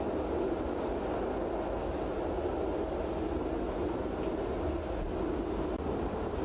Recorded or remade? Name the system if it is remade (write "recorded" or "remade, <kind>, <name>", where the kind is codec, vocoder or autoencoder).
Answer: recorded